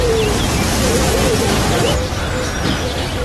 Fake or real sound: fake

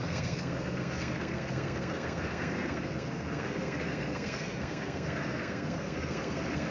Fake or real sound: fake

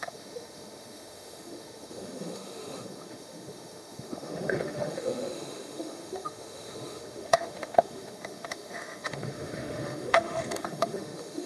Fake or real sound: fake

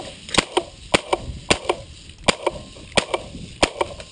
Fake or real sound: real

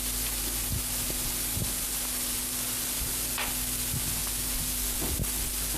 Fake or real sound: real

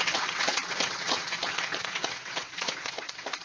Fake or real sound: fake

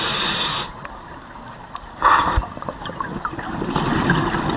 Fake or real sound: fake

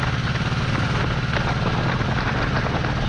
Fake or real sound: real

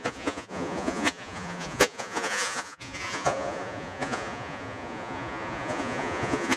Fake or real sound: fake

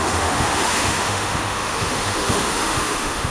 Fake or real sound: fake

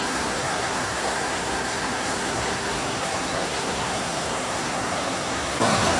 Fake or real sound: fake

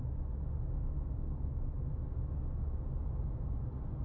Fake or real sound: real